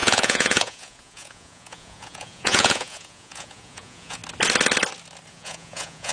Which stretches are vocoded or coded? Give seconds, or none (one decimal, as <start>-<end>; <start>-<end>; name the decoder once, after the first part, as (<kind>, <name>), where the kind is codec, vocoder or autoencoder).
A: 0.0-4.2 (vocoder, Vocos); 5.3-6.1